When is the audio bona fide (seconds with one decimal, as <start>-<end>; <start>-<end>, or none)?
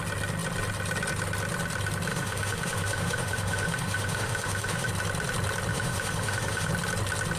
0.0-2.1; 4.9-5.7; 6.7-7.4